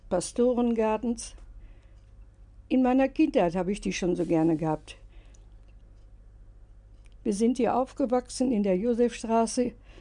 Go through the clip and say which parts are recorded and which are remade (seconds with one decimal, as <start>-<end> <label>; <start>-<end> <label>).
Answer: 0.0-10.0 recorded